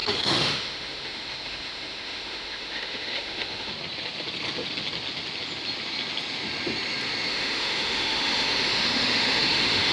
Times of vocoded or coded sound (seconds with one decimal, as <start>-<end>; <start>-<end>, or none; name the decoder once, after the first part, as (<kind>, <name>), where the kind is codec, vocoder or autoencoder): 0.0-3.7 (autoencoder, DAC-VAE); 7.3-9.9